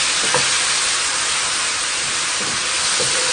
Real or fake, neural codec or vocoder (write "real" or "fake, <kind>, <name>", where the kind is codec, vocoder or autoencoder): real